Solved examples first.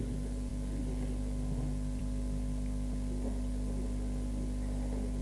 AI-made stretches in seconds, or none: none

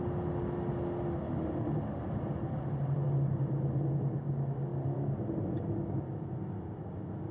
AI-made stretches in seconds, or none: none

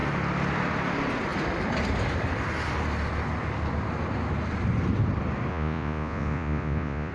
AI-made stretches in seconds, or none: 5.5-7.1 (vocoder, Vocos)